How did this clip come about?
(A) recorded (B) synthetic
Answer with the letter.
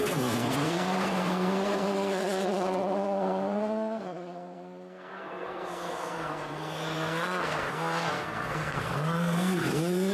B